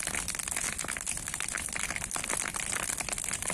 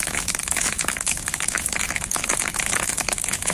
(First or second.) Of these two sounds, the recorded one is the first